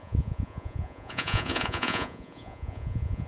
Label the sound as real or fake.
fake